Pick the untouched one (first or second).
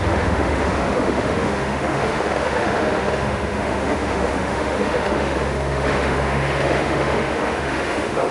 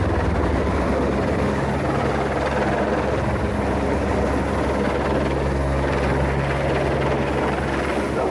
second